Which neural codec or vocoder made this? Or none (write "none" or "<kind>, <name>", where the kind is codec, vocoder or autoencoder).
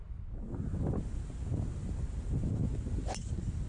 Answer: none